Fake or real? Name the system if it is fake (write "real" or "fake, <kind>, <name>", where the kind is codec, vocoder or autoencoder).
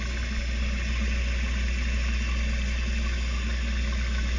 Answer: real